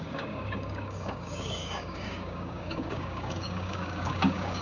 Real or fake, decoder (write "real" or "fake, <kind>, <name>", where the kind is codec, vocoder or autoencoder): fake, codec, DAC